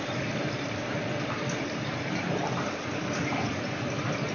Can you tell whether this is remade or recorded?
remade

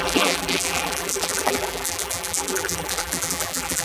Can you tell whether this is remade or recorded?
remade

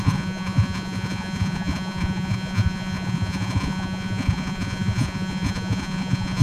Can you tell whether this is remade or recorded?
remade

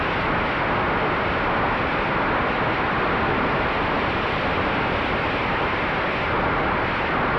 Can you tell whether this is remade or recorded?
recorded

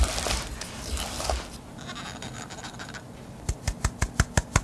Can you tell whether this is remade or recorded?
recorded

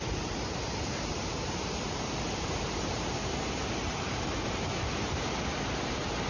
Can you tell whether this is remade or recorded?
remade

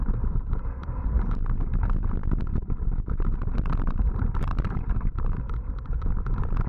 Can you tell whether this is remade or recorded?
remade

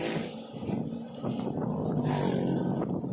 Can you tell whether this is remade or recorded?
recorded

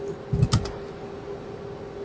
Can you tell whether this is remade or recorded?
recorded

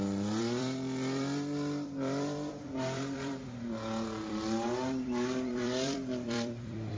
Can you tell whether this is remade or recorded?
remade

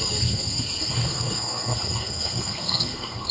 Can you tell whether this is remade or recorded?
remade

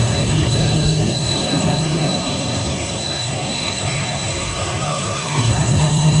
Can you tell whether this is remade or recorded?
remade